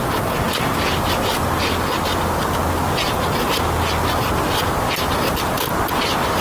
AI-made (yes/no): no